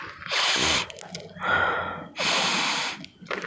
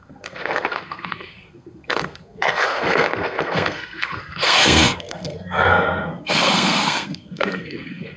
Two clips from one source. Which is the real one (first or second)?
first